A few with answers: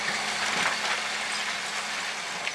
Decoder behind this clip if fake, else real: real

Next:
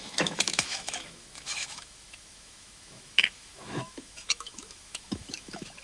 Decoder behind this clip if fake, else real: fake, autoencoder, DAC-VAE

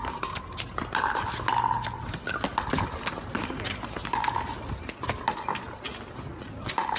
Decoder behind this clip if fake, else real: real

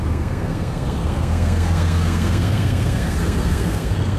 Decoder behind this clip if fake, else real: fake, codec, SNAC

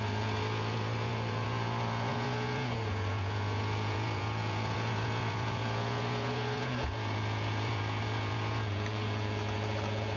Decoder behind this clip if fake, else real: fake, vocoder, Vocos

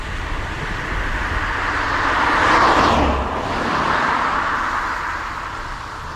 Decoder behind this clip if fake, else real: fake, vocoder, BigVGAN v2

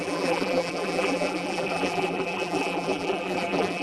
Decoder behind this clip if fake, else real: fake, vocoder, BigVGAN v2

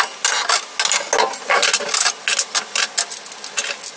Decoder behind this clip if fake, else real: real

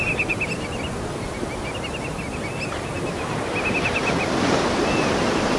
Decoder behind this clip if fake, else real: real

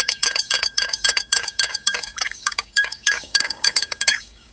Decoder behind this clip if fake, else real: fake, codec, DAC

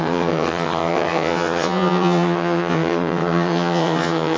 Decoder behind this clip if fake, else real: fake, vocoder, HiFi-GAN